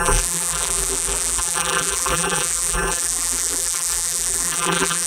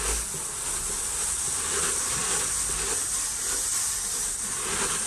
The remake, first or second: first